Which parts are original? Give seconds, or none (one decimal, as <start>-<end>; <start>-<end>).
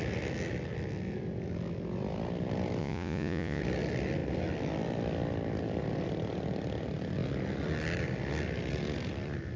0.0-2.8; 3.6-9.6